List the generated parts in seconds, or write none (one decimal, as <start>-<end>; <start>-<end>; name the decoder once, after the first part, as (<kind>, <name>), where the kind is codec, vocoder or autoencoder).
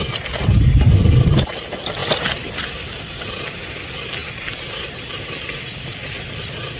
none